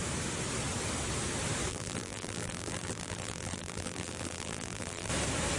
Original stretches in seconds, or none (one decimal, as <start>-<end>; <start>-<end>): 0.0-1.7; 5.1-5.6